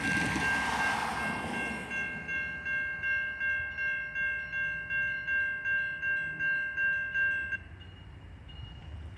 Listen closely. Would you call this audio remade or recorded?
recorded